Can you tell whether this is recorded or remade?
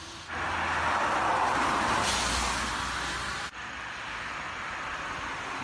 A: recorded